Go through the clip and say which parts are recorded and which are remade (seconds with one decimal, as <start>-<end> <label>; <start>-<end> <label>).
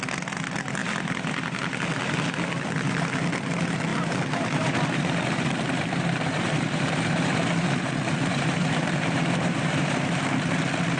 0.0-3.9 recorded; 3.9-7.9 remade; 7.9-8.3 recorded; 8.3-10.1 remade; 10.1-11.0 recorded